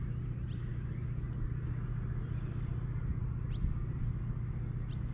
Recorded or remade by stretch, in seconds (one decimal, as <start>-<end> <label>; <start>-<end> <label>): 0.0-5.1 recorded